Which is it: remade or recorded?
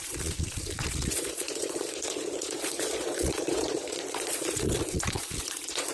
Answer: remade